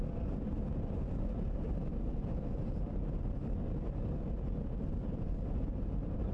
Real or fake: real